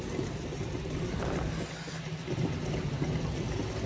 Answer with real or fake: real